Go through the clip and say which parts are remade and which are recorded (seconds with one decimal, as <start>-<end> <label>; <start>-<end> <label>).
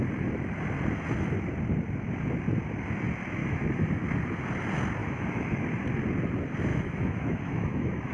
0.0-3.4 recorded; 3.4-4.0 remade; 4.0-5.0 recorded; 5.0-5.6 remade; 5.6-6.7 recorded; 6.7-8.1 remade